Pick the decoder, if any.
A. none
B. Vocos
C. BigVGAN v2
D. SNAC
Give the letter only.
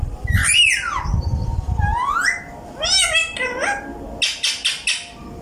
A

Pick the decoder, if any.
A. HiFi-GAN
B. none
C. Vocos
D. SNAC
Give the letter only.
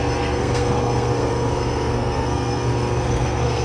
D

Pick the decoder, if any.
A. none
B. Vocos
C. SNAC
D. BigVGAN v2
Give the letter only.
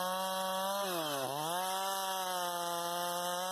A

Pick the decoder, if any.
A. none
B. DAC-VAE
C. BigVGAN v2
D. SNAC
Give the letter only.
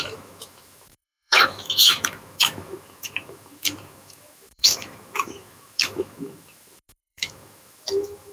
B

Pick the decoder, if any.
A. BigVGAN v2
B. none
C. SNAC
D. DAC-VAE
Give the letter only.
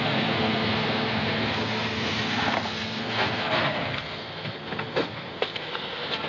C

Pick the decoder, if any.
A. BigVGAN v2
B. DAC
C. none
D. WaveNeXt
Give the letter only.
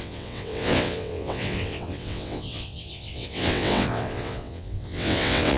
D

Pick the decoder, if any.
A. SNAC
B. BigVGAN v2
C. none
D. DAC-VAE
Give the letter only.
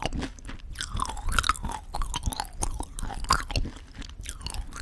C